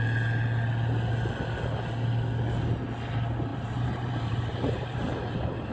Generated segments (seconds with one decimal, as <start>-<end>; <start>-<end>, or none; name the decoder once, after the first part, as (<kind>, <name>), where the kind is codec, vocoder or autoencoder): 3.5-5.7 (vocoder, BigVGAN v2)